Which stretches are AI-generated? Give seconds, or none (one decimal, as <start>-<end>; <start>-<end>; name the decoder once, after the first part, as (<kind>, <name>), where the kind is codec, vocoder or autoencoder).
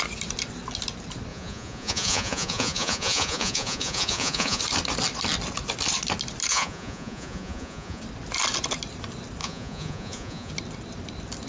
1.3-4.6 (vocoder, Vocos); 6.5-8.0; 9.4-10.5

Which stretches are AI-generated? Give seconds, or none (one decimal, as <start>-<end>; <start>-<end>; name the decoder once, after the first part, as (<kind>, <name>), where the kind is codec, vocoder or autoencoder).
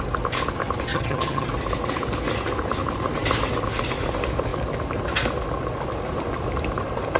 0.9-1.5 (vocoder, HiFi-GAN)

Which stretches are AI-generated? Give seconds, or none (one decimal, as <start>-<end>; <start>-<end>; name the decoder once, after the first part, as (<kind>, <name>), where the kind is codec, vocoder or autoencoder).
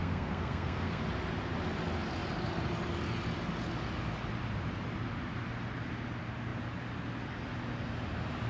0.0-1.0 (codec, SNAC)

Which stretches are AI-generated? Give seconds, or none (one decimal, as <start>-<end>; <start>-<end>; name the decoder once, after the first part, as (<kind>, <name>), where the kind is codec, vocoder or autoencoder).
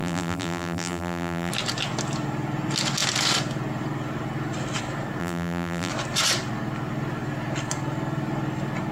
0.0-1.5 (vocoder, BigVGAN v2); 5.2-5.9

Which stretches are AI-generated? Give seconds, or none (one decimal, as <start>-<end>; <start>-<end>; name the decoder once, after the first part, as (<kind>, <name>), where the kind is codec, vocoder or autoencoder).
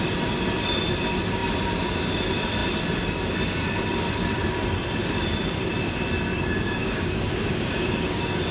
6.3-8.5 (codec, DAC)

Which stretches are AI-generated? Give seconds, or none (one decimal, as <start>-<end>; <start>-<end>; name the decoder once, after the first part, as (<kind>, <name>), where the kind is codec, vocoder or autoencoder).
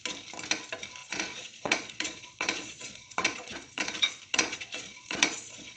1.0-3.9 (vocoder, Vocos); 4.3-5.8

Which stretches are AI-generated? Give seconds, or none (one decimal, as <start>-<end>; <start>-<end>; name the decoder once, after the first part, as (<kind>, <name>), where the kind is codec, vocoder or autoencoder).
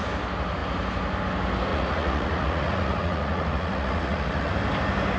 1.7-4.5 (vocoder, Vocos)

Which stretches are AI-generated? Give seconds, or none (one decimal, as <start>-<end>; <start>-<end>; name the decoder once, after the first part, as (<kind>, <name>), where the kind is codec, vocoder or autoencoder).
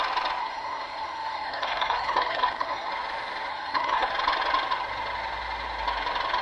0.4-2.9 (codec, SNAC); 3.5-4.1